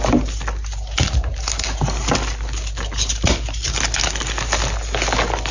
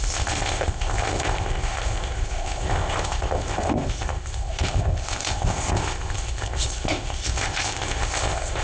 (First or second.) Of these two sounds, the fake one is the second